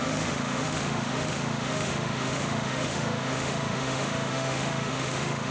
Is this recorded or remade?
remade